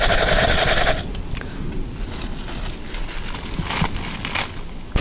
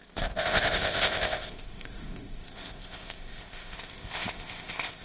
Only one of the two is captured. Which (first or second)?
first